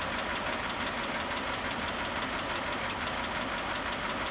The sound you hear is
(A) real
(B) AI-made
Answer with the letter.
A